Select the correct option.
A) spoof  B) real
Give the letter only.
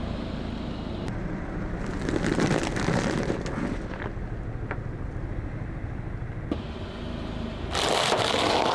B